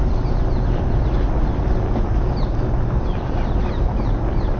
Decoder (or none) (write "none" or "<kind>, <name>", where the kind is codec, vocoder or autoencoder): none